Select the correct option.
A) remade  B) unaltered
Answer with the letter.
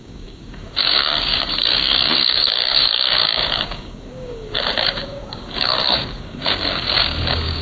A